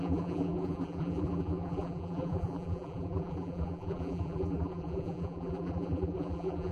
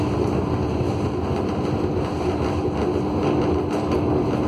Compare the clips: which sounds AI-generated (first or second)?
first